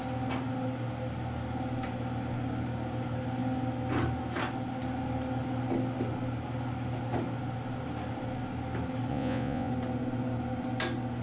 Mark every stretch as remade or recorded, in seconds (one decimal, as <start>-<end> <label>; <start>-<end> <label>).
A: 0.0-9.1 recorded; 9.1-9.7 remade; 9.7-11.2 recorded